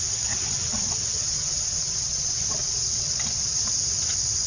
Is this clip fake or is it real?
fake